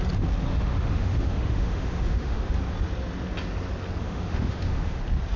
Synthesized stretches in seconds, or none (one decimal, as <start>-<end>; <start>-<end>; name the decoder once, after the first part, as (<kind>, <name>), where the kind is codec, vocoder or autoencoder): 0.5-2.5 (autoencoder, DAC-VAE); 4.0-5.0